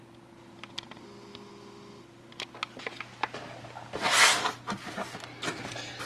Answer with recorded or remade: recorded